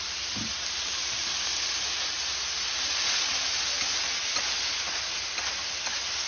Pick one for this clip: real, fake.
real